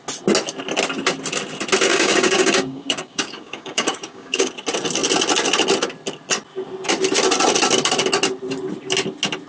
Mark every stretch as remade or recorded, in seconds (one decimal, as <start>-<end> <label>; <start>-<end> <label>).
0.0-1.9 recorded; 1.9-4.5 remade; 4.5-9.5 recorded